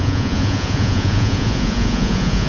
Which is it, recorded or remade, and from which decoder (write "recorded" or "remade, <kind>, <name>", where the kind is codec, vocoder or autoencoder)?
remade, vocoder, Vocos